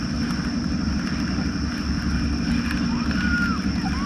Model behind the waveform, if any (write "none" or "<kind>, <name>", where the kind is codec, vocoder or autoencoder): none